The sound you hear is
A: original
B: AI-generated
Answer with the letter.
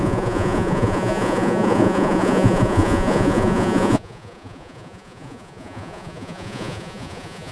B